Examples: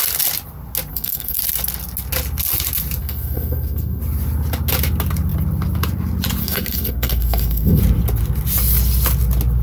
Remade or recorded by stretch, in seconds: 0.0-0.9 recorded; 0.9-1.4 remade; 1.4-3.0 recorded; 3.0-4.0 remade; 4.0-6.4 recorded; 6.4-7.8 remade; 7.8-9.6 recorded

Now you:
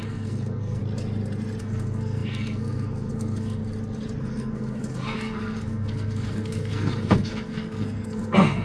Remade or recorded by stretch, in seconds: 0.0-0.8 remade; 0.8-1.6 recorded; 1.6-3.6 remade; 3.6-4.2 recorded; 4.2-8.6 remade